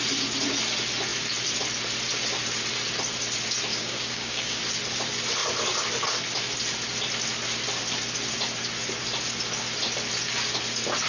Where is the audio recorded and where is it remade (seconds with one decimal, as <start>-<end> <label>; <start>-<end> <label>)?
0.0-3.7 recorded; 3.7-4.6 remade; 4.6-11.1 recorded